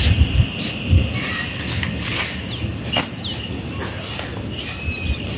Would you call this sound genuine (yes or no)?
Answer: yes